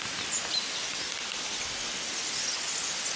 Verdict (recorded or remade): recorded